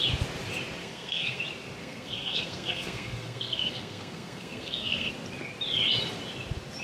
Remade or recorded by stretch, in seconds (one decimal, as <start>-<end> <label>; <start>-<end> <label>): 0.0-0.8 recorded; 0.8-1.4 remade; 1.4-1.8 recorded; 1.8-5.1 remade; 5.1-6.8 recorded